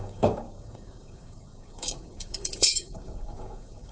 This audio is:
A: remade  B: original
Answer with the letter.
A